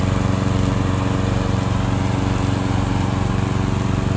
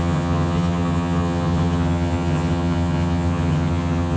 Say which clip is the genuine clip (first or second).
first